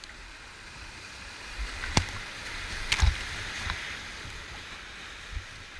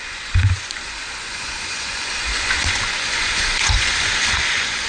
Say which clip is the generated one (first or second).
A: second